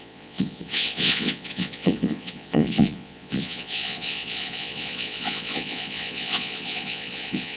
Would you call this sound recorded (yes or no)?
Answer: no